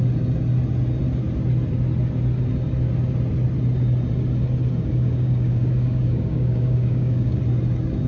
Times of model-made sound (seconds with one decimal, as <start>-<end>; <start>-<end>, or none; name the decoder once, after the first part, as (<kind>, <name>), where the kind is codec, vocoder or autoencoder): 4.9-7.4 (codec, DAC)